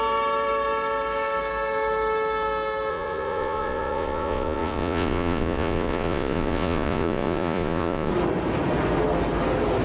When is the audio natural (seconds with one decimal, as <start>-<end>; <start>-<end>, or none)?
0.0-2.9; 8.1-9.8